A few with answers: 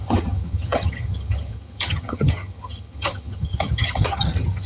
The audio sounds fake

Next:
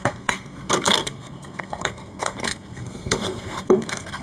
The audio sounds fake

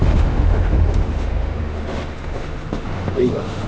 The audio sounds fake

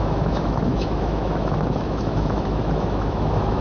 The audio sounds fake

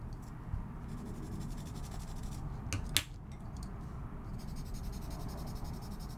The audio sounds real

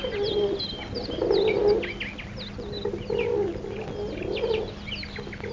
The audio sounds real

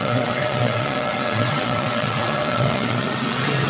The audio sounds fake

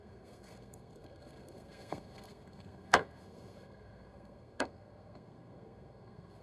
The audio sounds fake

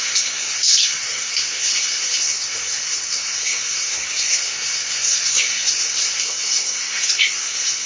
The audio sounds fake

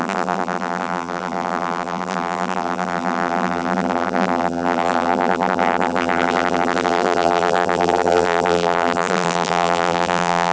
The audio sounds fake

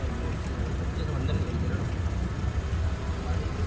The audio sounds real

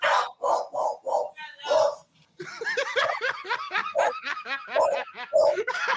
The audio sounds real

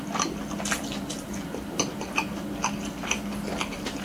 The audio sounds real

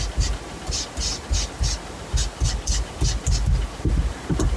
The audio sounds real